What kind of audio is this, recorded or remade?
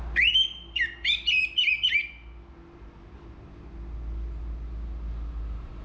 recorded